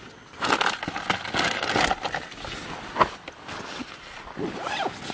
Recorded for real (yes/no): yes